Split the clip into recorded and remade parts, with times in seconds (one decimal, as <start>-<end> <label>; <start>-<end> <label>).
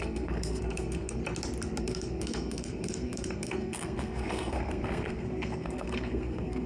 0.0-1.2 remade; 1.2-1.8 recorded; 1.8-6.7 remade